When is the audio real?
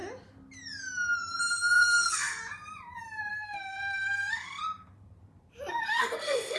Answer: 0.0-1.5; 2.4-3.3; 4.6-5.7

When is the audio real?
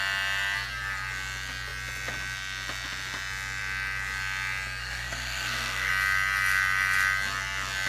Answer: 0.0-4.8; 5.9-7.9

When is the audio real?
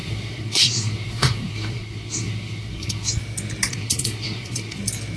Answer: 3.1-3.7; 4.8-5.2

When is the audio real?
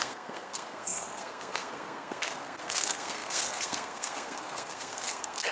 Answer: none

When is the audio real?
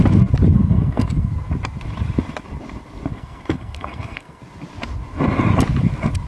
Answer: 0.0-0.5; 1.3-3.1; 4.4-6.3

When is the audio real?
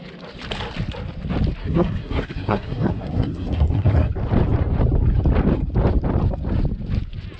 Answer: 0.0-1.6; 4.1-7.4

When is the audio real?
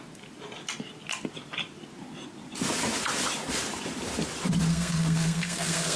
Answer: 0.0-4.7